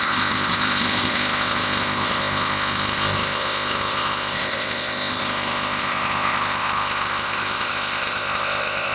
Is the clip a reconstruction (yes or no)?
yes